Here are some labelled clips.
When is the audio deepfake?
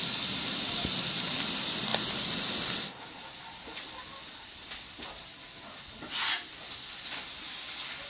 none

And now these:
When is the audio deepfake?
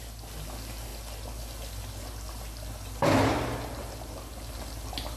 none